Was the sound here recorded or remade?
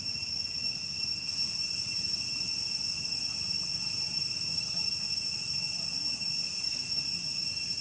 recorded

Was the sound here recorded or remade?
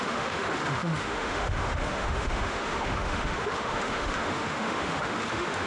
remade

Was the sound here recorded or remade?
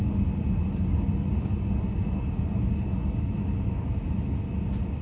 recorded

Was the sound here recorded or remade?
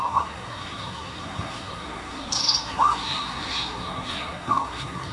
remade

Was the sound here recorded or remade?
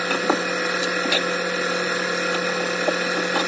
recorded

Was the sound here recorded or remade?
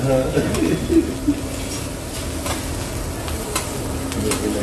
recorded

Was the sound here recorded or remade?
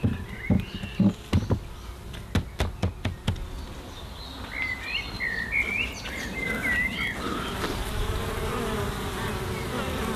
recorded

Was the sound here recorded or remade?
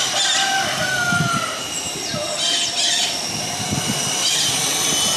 recorded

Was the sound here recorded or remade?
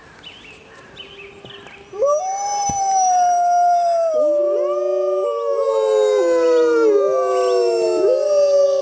recorded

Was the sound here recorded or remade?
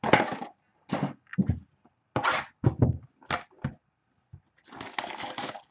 recorded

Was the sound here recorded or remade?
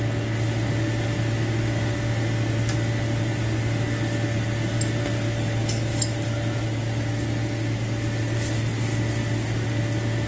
recorded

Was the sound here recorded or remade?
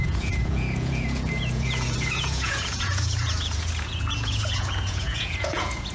remade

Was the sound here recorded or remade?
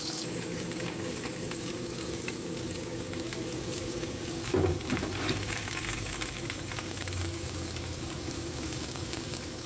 remade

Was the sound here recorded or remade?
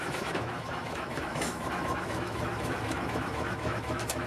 remade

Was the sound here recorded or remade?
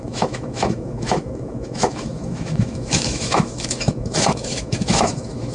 remade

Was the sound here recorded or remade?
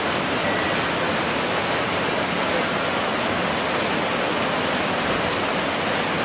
recorded